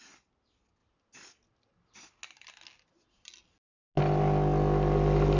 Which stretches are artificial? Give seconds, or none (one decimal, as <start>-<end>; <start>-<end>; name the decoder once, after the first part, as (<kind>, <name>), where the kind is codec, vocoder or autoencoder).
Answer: none